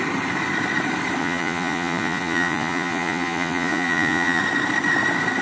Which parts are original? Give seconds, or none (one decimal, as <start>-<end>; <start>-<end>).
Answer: 0.0-1.2; 4.4-5.4